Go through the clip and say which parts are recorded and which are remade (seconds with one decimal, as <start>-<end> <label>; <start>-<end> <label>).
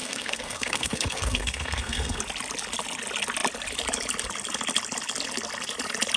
0.0-2.2 remade; 2.2-6.2 recorded